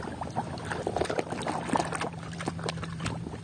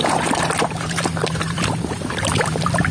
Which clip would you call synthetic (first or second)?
second